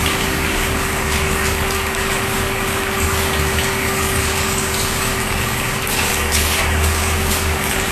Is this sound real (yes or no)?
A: no